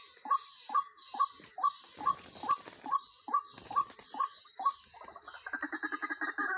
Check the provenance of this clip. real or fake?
real